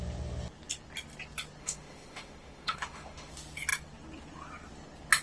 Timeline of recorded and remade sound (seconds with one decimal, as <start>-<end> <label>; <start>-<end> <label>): 0.0-1.6 recorded; 1.6-3.3 remade; 3.3-5.2 recorded

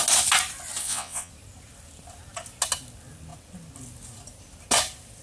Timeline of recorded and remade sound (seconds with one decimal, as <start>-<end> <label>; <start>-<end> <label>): 0.0-0.8 recorded; 0.8-1.3 remade; 1.3-5.2 recorded

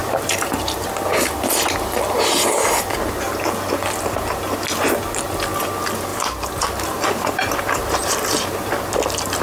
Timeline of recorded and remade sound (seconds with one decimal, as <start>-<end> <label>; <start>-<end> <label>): 0.0-0.9 remade; 0.9-6.1 recorded; 6.1-8.7 remade; 8.7-9.4 recorded

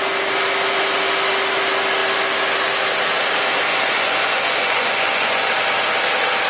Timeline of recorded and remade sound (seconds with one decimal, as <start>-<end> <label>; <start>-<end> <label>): 0.0-3.7 recorded; 3.7-5.5 remade; 5.5-6.5 recorded

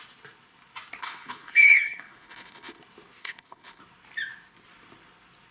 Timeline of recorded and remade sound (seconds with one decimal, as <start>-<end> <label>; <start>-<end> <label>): 0.0-1.0 recorded; 1.0-2.8 remade; 2.8-3.2 recorded; 3.2-3.8 remade; 3.8-5.5 recorded

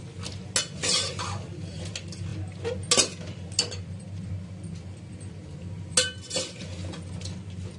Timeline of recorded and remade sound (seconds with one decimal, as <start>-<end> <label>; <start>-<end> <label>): 0.0-7.8 recorded

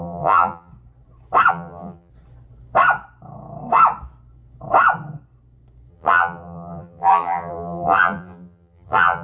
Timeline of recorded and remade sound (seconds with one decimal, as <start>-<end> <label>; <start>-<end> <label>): 0.0-0.7 remade; 0.7-1.5 recorded; 1.5-2.1 remade; 2.1-5.9 recorded; 5.9-9.2 remade

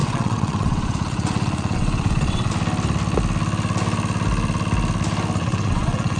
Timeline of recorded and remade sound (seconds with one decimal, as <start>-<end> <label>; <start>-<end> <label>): 0.0-2.5 remade; 2.5-5.4 recorded; 5.4-6.2 remade